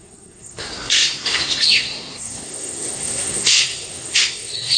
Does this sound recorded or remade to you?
remade